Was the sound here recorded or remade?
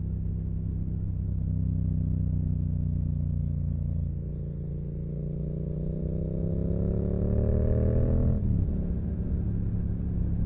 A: recorded